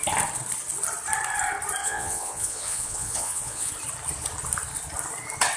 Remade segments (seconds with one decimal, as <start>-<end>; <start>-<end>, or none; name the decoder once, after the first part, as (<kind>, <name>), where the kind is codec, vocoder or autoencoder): 1.8-3.7 (vocoder, Vocos)